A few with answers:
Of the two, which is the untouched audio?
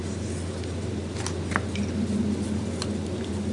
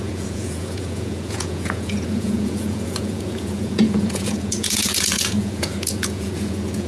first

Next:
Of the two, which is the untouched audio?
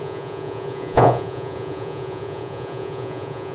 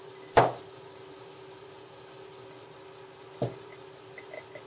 second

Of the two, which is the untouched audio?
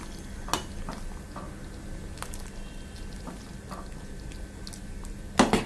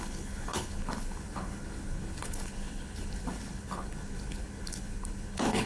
first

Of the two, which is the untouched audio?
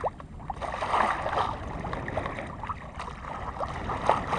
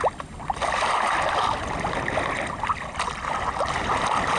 first